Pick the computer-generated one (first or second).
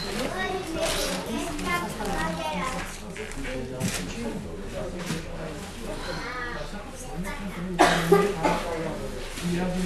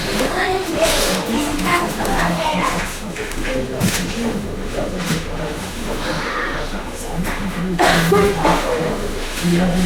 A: second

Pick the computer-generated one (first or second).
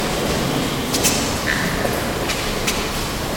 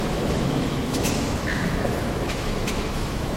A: second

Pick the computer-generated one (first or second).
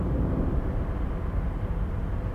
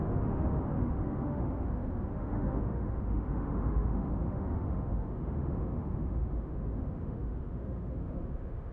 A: second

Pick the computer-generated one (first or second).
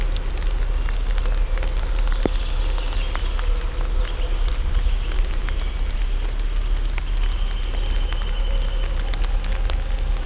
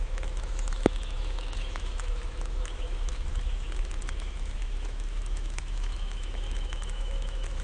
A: second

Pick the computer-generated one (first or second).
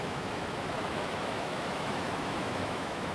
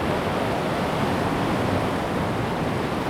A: first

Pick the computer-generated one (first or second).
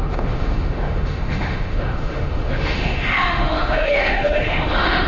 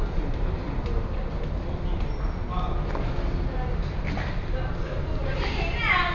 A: first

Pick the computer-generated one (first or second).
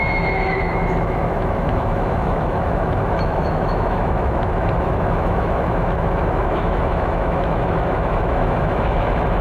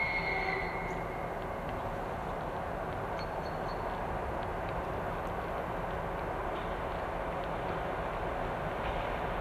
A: first